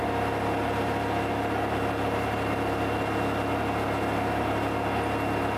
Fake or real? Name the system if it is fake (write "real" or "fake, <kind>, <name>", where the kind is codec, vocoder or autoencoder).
real